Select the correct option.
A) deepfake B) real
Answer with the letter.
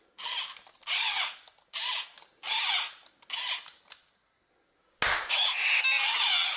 B